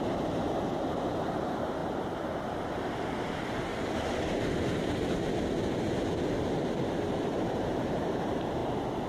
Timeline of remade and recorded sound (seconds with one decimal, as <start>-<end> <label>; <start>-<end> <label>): 0.0-3.7 remade; 3.7-6.9 recorded; 6.9-9.1 remade